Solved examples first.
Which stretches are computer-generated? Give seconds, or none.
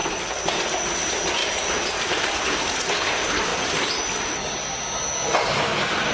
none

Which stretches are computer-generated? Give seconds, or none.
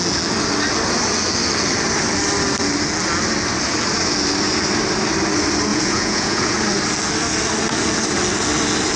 5.7-6.6 (vocoder, Vocos)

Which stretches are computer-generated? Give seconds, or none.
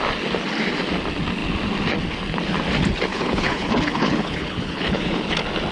3.1-5.3 (codec, HILCodec)